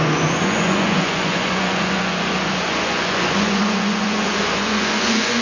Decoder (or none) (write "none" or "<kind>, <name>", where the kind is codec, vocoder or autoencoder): vocoder, Vocos